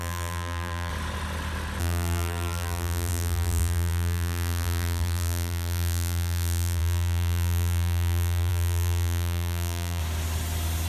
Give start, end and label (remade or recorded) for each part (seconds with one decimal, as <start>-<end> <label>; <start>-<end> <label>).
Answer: 0.0-0.9 remade; 0.9-1.8 recorded; 1.8-10.0 remade; 10.0-10.9 recorded